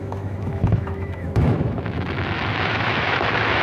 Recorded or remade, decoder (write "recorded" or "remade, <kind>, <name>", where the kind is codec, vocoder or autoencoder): remade, autoencoder, DAC-VAE